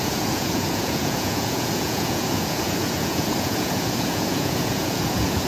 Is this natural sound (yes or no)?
no